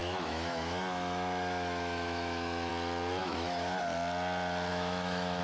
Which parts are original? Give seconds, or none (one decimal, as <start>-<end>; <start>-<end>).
2.7-3.2; 3.8-4.7